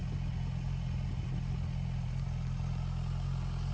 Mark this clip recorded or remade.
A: recorded